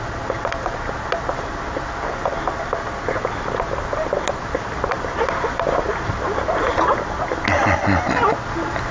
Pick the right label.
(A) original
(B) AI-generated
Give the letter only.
A